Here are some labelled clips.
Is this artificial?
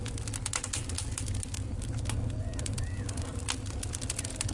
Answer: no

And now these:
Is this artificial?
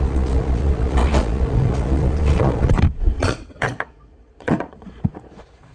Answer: yes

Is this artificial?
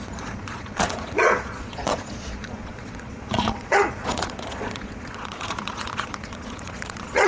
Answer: yes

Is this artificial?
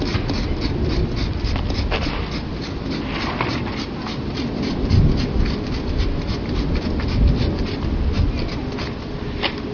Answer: no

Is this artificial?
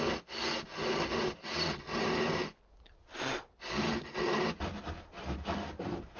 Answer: no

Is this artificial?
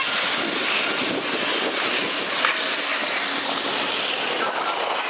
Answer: no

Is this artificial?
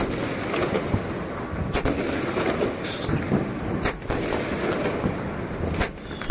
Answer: no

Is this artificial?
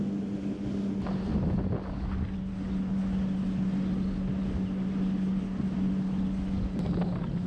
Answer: no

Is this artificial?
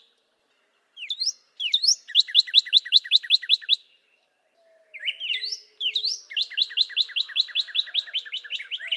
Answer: no